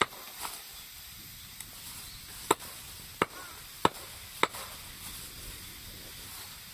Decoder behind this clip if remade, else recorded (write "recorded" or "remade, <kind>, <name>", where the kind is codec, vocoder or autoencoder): recorded